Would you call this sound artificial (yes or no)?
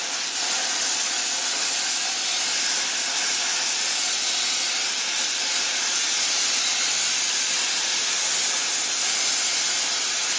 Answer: no